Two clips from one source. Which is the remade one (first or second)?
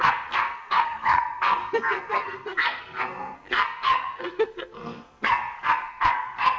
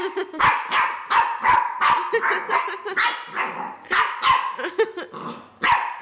first